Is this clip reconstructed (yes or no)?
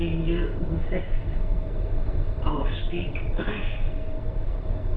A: yes